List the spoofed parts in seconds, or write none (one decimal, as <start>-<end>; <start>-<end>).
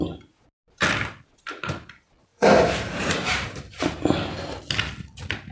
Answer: 2.3-4.6